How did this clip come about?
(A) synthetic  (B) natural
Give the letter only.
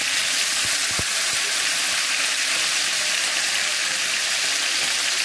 B